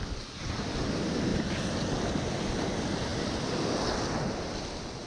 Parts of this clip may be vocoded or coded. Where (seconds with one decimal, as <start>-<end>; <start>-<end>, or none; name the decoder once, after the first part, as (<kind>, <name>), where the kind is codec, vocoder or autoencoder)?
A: none